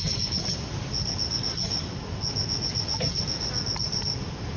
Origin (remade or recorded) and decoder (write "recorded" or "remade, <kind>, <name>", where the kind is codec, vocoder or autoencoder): recorded